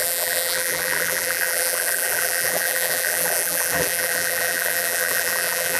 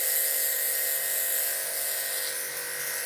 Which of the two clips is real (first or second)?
second